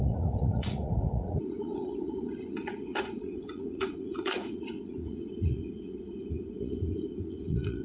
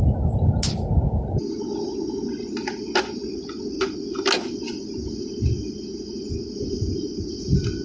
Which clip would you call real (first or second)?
second